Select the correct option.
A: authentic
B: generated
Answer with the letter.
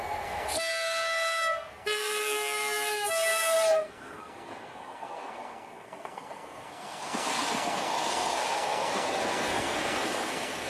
B